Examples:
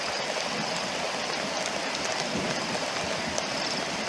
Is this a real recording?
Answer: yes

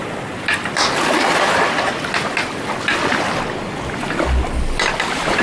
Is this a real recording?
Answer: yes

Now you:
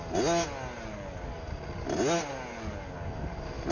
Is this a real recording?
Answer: yes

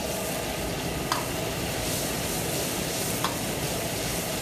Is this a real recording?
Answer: yes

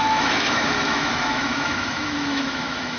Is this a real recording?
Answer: no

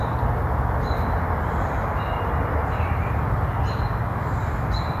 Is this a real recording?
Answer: yes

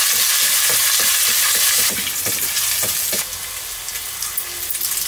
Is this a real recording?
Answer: yes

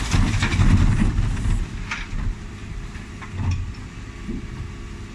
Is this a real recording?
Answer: yes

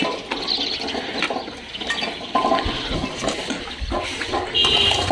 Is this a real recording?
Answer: yes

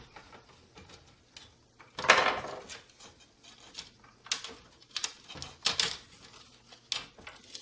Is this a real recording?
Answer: yes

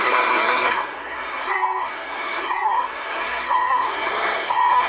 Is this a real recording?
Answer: no